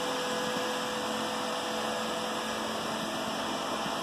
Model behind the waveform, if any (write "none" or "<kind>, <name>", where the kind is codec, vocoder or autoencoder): none